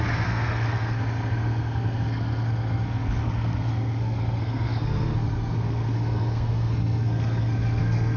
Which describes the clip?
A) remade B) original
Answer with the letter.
A